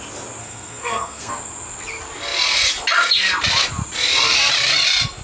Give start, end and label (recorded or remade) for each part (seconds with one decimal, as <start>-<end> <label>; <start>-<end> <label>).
0.0-0.4 recorded; 0.4-1.3 remade; 1.3-5.2 recorded